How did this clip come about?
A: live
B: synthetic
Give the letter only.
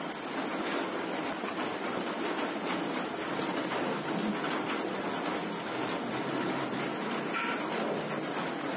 A